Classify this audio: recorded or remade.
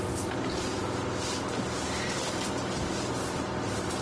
recorded